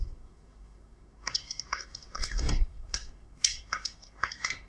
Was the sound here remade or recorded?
remade